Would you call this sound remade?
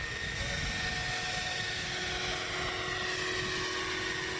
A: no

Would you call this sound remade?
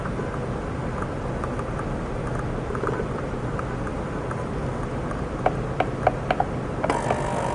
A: no